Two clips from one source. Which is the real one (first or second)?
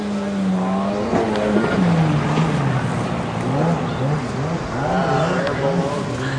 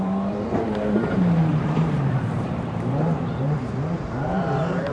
first